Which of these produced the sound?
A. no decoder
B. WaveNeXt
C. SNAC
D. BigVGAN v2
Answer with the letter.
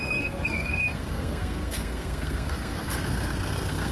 C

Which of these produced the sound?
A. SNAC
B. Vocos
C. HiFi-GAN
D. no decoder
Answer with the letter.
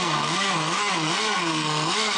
A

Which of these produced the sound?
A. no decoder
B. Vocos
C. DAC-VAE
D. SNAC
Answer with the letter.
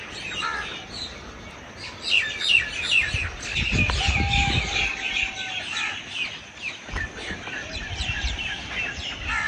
A